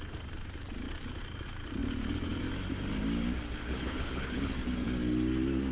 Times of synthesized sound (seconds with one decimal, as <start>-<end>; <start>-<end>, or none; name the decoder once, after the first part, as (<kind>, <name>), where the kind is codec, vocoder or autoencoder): 3.6-4.5 (codec, HILCodec)